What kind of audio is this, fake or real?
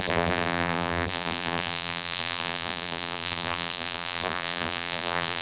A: fake